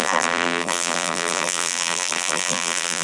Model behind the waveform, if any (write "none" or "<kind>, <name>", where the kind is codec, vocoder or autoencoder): vocoder, BigVGAN v2